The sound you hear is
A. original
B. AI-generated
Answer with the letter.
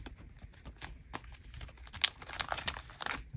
A